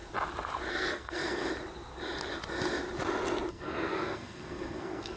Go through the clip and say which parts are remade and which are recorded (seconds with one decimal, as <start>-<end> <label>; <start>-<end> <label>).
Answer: 0.0-0.7 recorded; 0.7-1.4 remade; 1.4-3.5 recorded; 3.5-5.2 remade